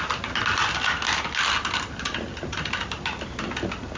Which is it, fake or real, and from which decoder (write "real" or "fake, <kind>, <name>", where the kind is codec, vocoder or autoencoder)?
real